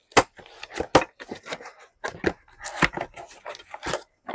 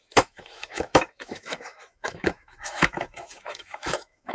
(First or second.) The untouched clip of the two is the first